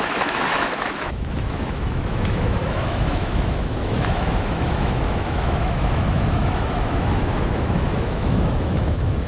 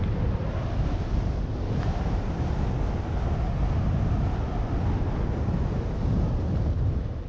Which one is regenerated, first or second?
first